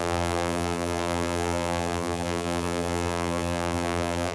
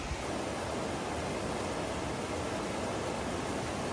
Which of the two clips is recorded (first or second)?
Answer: second